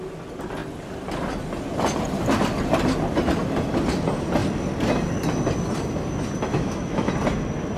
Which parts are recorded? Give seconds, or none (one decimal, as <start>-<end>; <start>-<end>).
0.0-6.5; 7.1-7.8